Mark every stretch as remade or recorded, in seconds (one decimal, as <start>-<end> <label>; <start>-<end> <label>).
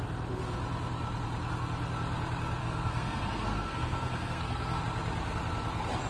0.0-2.6 recorded; 2.6-4.8 remade; 4.8-6.1 recorded